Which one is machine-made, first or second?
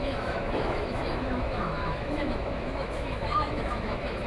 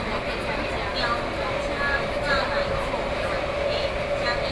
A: first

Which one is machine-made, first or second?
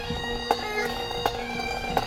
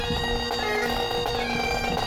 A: first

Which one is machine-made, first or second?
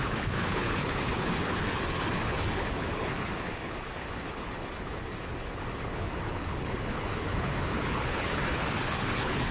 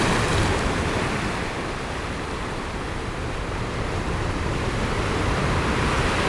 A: first